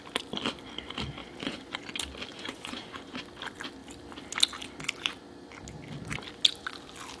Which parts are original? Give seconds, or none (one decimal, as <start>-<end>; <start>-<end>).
0.0-1.2; 1.8-2.3; 3.2-7.2